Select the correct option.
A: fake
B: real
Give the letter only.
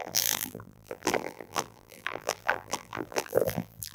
A